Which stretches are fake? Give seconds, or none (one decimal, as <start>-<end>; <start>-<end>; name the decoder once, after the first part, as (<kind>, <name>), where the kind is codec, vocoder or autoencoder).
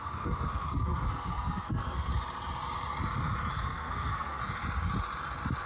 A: 0.0-2.1 (codec, SNAC); 3.5-4.4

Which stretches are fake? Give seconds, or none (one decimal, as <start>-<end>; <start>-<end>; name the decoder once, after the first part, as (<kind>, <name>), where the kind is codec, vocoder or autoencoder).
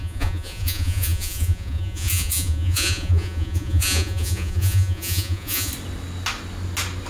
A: 0.0-5.7 (vocoder, Vocos)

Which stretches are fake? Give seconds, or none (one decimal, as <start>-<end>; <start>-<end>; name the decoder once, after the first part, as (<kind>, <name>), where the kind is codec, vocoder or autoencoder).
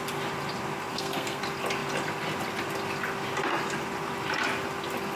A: 0.9-1.4 (codec, SNAC)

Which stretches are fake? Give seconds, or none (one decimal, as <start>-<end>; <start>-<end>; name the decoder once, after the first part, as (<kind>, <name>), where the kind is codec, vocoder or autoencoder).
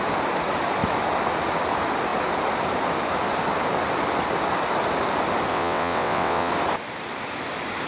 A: 5.5-6.5 (vocoder, WaveNeXt)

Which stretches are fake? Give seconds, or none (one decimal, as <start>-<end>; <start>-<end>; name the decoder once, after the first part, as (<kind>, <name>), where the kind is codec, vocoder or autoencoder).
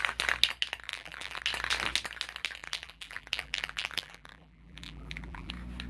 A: 0.9-1.4 (vocoder, BigVGAN v2); 2.6-5.5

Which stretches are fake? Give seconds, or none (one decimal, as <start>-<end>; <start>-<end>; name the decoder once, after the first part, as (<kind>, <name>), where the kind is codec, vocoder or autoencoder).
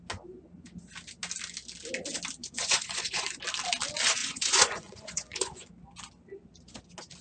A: 2.4-3.4 (vocoder, Vocos); 4.2-5.7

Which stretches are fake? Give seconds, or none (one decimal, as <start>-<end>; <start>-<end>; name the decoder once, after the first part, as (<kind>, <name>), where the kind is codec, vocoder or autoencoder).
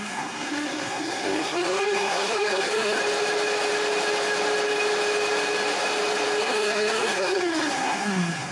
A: 0.0-3.0 (codec, SNAC); 6.4-8.5